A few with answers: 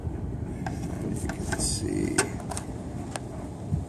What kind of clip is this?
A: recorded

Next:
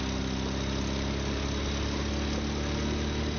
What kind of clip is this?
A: recorded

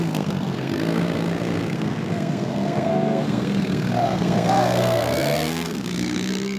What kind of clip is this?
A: remade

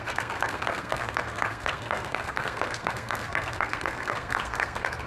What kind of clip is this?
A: remade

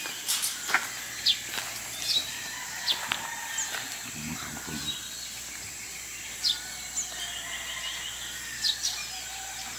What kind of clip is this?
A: recorded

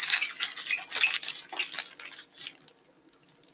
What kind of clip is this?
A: recorded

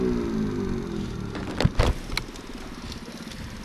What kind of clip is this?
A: recorded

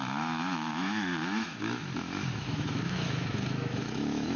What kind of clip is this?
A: remade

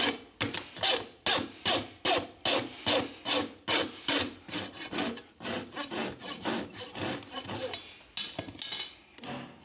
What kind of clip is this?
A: recorded